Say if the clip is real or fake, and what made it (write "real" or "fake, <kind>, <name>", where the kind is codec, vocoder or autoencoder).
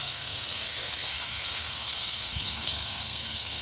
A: fake, codec, SNAC